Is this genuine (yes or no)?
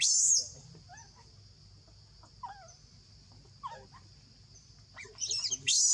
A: yes